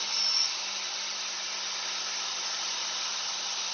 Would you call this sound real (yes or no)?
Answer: yes